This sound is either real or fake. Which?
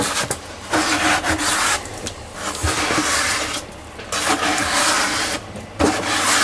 real